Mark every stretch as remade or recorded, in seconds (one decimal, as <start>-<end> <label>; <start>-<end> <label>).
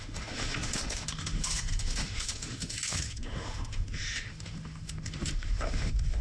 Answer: 0.0-6.2 remade